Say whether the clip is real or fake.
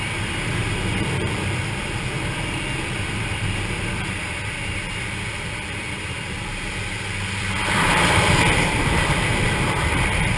fake